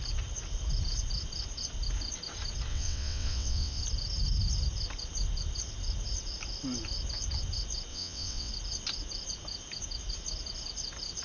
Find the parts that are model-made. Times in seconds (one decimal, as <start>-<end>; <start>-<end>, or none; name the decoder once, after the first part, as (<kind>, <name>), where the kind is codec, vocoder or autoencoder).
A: 2.7-3.8 (vocoder, WaveNeXt); 7.9-8.5